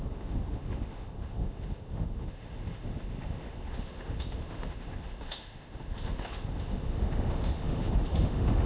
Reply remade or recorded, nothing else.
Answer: remade